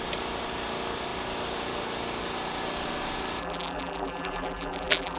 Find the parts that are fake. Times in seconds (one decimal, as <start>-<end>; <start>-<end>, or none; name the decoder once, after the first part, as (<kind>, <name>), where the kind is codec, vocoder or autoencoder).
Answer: 3.4-5.2 (vocoder, BigVGAN v2)

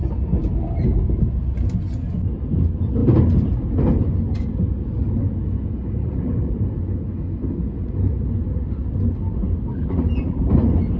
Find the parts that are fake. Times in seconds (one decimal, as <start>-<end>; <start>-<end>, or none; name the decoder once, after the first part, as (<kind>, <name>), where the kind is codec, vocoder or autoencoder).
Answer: 6.0-6.6 (vocoder, BigVGAN v2); 9.7-10.5

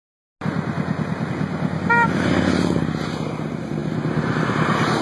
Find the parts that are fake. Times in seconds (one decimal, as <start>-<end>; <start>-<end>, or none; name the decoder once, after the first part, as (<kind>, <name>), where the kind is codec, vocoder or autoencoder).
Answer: none

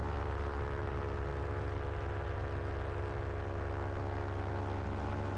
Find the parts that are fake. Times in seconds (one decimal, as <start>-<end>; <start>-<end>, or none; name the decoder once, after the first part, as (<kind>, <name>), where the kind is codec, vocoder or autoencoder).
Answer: 0.0-1.3 (vocoder, BigVGAN v2); 4.5-5.4

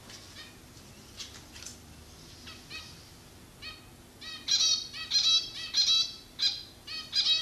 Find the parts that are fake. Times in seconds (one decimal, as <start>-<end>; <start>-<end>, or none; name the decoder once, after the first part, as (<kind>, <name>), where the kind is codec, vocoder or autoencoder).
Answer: none

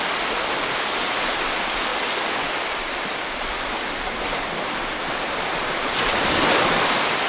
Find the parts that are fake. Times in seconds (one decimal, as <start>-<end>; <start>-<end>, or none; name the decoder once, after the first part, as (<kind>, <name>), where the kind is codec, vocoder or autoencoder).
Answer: none

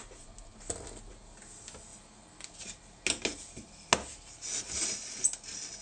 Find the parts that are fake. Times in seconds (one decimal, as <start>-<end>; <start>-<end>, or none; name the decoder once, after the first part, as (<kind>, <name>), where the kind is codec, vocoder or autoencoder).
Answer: none